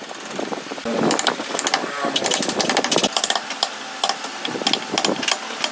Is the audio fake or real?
real